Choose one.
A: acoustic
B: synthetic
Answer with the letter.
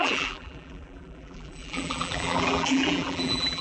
B